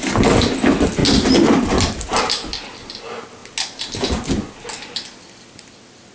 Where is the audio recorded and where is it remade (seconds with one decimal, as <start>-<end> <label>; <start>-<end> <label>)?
0.0-6.1 recorded